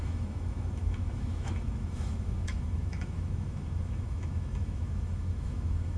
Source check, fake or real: fake